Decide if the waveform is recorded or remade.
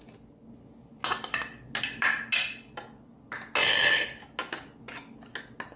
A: recorded